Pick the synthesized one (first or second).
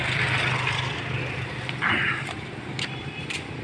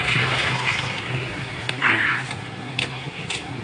second